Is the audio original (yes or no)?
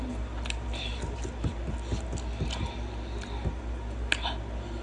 yes